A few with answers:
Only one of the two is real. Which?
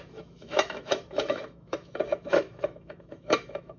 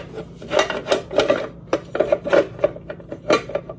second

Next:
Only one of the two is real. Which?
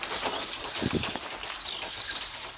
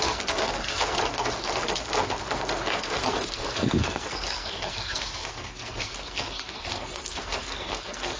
first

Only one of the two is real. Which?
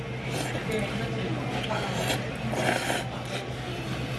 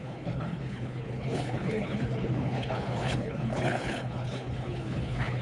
first